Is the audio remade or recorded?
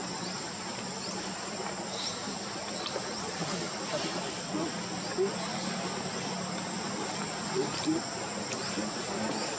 recorded